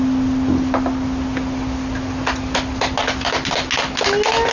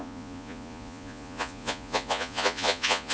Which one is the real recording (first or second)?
first